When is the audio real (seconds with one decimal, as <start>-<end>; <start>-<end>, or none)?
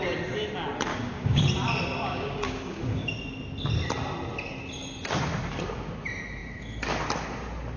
0.0-0.9; 1.4-2.1; 3.1-7.8